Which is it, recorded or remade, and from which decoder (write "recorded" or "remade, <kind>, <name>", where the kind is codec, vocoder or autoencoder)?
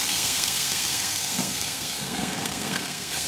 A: remade, codec, SNAC